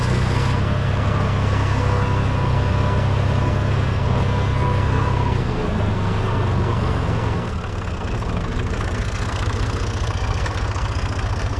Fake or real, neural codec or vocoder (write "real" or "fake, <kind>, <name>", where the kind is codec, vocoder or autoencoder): fake, codec, SNAC